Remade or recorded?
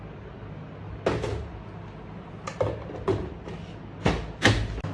recorded